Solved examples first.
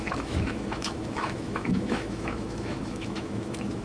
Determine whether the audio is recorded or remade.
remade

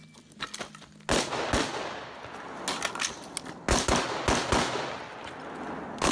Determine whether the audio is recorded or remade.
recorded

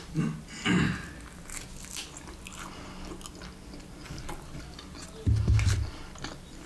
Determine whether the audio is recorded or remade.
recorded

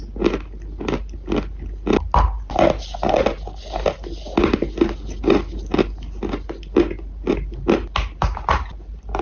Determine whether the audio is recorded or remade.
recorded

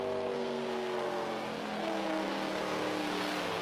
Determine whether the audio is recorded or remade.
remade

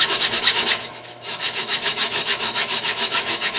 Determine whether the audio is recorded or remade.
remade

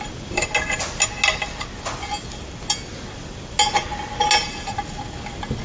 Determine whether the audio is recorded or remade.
recorded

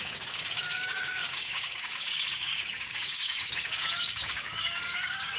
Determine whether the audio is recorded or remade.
remade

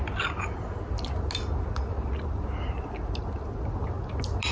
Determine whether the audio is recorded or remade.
recorded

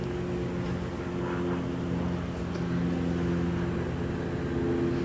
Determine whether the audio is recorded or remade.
recorded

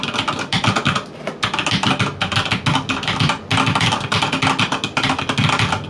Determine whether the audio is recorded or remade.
recorded